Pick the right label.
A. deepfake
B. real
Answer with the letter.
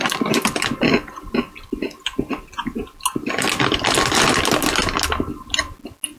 B